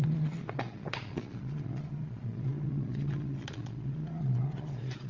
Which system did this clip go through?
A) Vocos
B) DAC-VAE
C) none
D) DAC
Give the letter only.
A